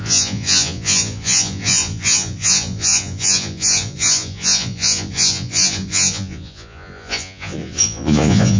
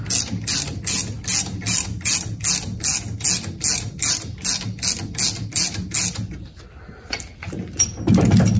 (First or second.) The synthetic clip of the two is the first